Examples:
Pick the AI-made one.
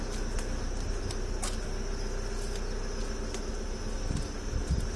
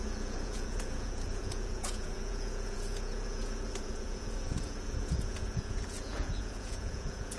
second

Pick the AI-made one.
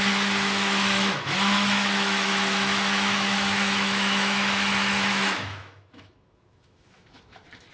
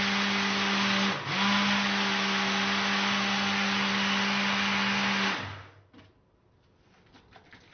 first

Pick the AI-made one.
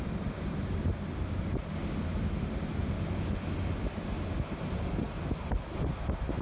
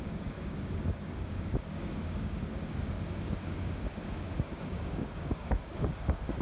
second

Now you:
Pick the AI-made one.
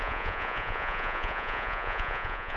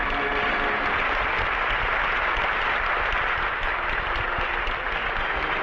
first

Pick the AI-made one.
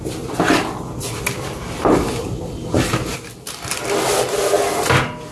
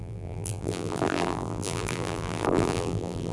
second